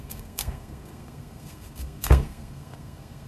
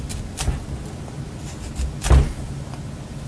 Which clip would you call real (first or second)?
second